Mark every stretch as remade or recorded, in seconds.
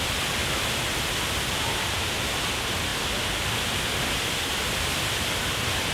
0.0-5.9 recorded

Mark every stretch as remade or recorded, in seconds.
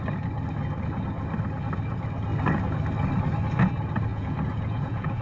0.0-4.1 recorded; 4.1-5.2 remade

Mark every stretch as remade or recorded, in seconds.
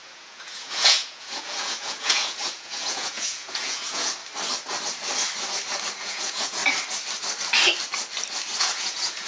0.0-4.2 remade; 4.2-6.0 recorded; 6.0-6.6 remade; 6.6-8.6 recorded; 8.6-9.3 remade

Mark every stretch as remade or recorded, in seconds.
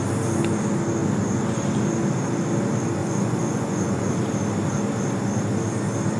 0.0-3.0 recorded; 3.0-4.1 remade; 4.1-6.2 recorded